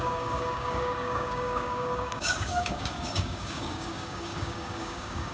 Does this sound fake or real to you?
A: fake